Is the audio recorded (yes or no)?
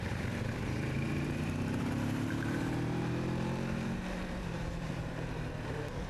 no